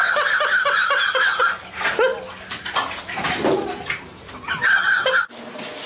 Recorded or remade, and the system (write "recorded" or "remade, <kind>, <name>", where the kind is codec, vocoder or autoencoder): recorded